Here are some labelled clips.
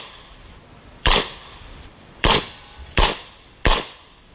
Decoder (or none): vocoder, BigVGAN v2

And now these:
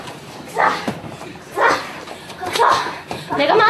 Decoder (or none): vocoder, BigVGAN v2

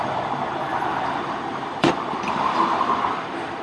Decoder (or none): vocoder, BigVGAN v2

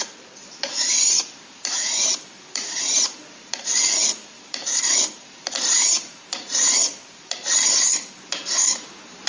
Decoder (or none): vocoder, BigVGAN v2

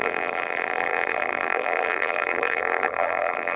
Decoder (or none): vocoder, BigVGAN v2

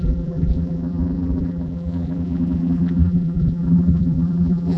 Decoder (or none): vocoder, BigVGAN v2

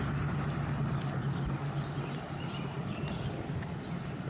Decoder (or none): none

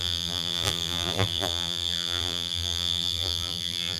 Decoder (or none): vocoder, BigVGAN v2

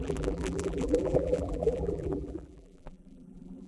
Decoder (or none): vocoder, BigVGAN v2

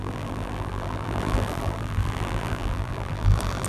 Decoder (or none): vocoder, BigVGAN v2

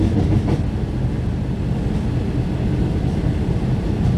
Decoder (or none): none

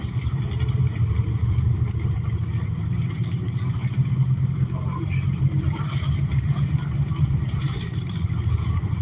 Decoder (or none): vocoder, BigVGAN v2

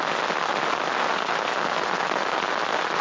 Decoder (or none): none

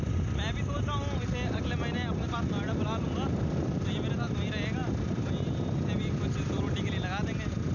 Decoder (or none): none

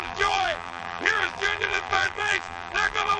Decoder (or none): vocoder, BigVGAN v2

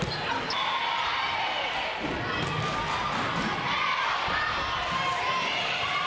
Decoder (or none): none